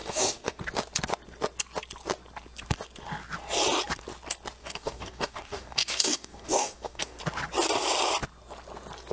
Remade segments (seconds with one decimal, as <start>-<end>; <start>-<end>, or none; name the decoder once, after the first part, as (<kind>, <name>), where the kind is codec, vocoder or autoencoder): 0.0-0.6 (codec, DAC); 4.6-7.2